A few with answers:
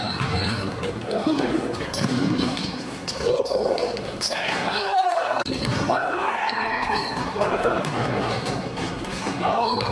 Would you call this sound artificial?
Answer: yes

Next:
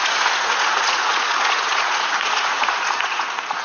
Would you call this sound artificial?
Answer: yes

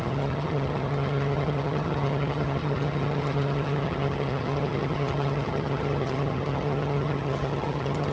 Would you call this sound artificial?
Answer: yes